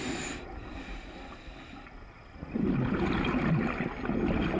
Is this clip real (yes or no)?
yes